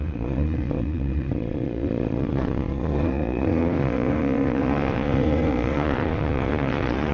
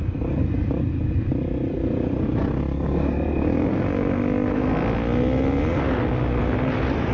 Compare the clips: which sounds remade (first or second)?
first